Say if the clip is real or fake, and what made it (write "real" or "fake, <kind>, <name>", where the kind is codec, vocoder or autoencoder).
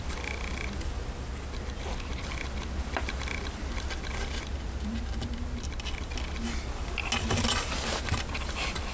real